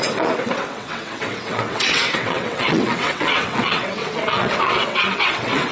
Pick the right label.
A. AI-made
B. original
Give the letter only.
A